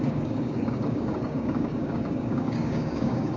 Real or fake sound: fake